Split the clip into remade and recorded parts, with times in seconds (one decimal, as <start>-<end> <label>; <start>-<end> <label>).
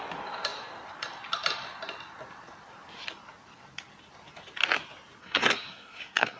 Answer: 0.0-5.2 recorded; 5.2-6.4 remade